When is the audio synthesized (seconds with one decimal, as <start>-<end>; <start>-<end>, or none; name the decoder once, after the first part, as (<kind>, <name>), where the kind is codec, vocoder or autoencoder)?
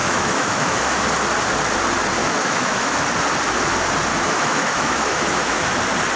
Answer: 0.0-0.8 (autoencoder, DAC-VAE); 2.2-2.9; 4.1-5.8